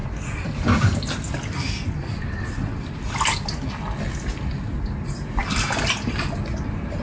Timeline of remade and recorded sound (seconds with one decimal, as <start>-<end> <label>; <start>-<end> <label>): 0.0-7.0 recorded